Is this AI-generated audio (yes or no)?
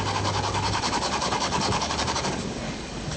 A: yes